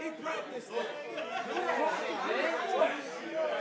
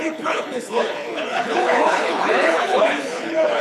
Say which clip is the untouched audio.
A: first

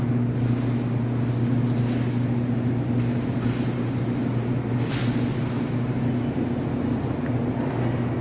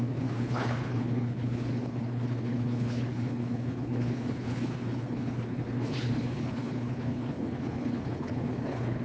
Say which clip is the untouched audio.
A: first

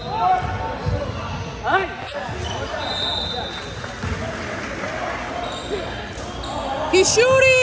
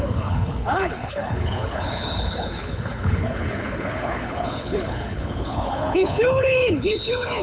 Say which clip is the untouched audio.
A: first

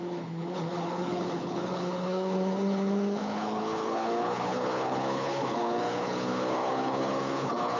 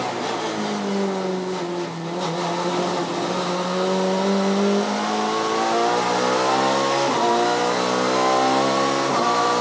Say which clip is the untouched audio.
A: second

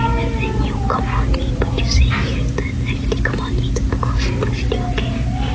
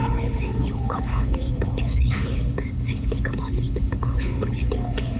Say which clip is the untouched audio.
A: first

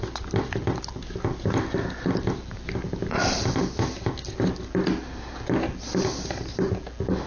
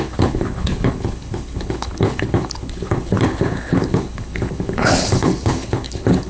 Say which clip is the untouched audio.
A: first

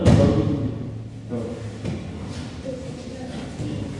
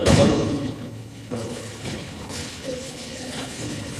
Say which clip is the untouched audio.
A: first